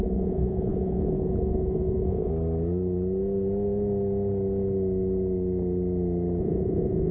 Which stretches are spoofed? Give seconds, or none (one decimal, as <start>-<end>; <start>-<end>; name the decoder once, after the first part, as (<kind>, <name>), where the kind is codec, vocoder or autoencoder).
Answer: 0.0-2.3 (vocoder, Vocos); 6.4-7.1